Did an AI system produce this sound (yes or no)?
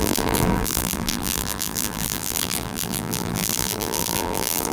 yes